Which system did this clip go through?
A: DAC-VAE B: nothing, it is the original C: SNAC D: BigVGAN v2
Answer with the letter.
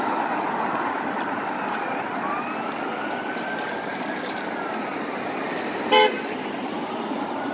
B